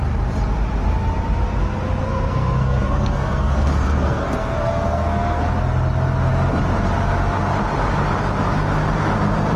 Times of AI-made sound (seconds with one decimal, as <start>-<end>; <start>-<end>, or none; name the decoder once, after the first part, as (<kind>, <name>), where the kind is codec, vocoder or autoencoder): 2.1-5.4 (codec, SNAC)